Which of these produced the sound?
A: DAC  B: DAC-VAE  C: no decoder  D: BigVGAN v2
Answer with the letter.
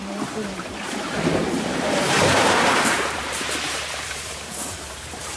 D